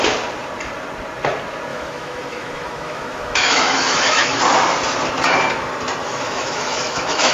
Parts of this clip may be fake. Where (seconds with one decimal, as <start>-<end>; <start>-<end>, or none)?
1.7-4.4; 6.0-7.3